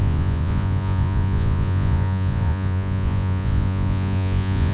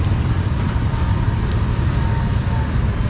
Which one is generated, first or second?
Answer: first